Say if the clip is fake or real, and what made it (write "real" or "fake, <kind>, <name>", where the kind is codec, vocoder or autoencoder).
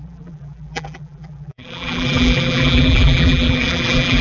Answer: fake, vocoder, BigVGAN v2